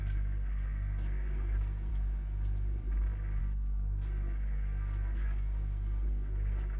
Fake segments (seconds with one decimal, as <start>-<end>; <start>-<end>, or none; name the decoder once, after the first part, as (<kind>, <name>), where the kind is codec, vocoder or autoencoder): 0.0-1.9 (codec, SNAC); 3.4-6.8